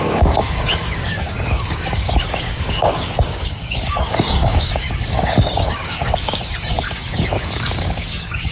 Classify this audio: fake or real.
fake